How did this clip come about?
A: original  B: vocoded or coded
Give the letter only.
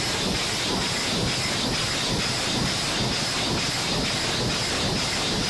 A